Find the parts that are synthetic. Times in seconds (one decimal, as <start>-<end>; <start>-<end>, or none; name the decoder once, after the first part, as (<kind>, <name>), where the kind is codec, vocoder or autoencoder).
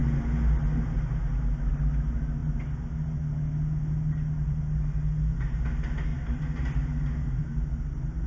none